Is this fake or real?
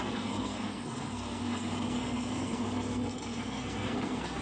fake